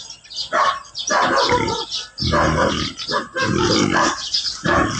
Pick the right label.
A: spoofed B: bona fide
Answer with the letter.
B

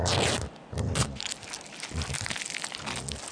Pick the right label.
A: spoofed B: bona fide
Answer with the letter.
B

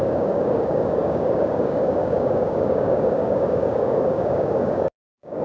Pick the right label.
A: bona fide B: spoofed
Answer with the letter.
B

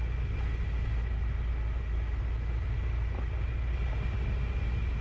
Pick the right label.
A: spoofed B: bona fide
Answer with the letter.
B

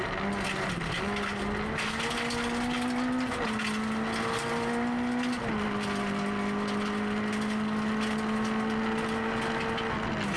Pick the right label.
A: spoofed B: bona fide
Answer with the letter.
B